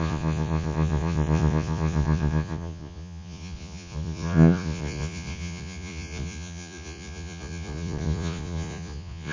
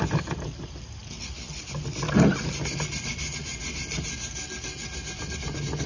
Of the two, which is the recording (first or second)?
second